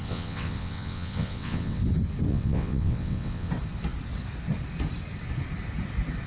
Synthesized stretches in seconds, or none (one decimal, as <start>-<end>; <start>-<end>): 0.0-1.8; 2.3-3.5